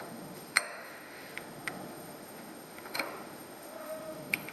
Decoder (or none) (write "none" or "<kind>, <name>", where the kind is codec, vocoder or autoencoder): autoencoder, DAC-VAE